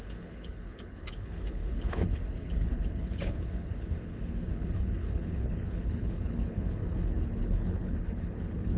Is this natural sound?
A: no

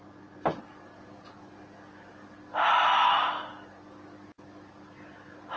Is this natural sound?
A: yes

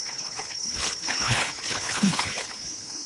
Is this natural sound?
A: no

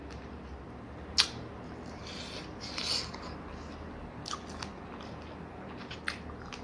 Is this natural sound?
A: yes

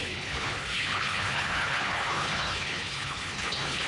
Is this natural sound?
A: no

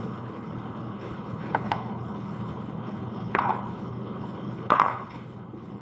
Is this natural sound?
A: no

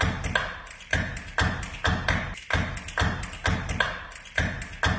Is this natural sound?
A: yes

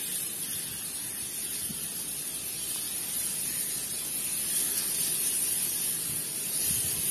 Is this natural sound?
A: yes